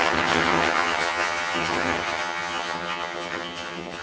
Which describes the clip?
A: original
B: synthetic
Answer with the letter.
B